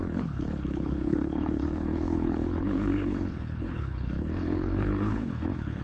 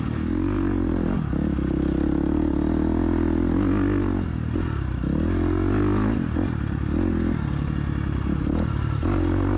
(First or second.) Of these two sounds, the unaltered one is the second